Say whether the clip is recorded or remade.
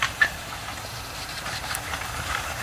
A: remade